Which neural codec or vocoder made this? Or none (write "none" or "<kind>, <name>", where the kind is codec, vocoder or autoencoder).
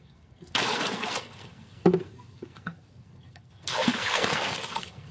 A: codec, SNAC